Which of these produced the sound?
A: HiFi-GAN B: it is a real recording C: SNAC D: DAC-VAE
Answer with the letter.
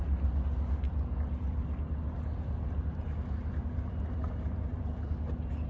B